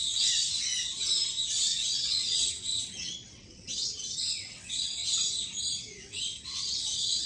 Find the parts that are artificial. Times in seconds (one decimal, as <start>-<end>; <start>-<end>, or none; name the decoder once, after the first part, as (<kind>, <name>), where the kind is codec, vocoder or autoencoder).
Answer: 0.0-0.7 (vocoder, WaveNeXt); 1.5-5.0; 5.8-7.3